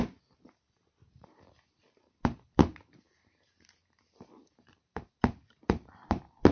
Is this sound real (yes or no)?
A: no